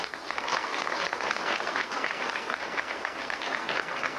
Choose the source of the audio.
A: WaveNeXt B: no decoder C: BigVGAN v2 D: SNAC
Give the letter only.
D